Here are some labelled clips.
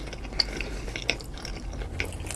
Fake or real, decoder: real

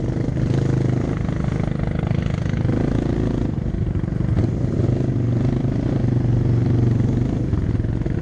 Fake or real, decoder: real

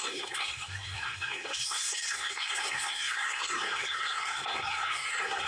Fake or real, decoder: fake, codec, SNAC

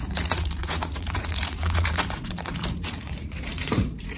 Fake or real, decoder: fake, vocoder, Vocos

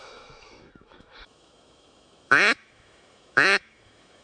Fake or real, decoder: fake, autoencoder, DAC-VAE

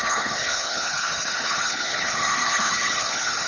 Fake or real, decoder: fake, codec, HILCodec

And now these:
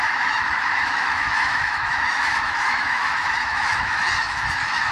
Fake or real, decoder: fake, autoencoder, DAC-VAE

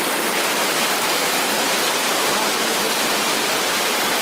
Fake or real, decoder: real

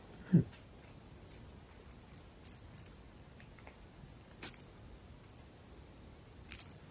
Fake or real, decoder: real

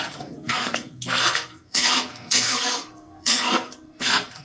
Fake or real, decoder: fake, codec, SNAC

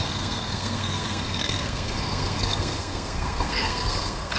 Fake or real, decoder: fake, codec, SNAC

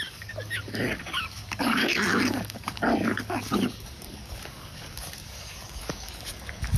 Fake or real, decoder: fake, codec, DAC